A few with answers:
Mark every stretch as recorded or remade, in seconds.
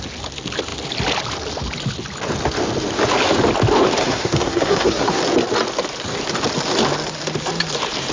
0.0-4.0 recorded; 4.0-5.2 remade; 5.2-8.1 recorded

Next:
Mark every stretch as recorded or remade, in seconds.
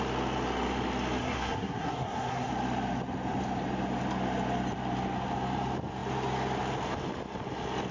0.0-1.2 recorded; 1.2-2.5 remade; 2.5-7.9 recorded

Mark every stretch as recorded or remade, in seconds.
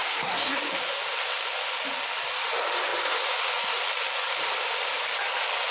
0.0-0.6 remade; 0.6-5.7 recorded